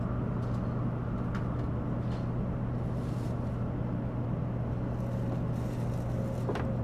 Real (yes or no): yes